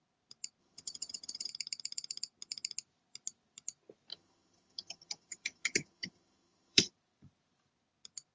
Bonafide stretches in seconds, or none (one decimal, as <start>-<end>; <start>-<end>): 0.0-0.6; 1.5-4.1; 6.9-8.3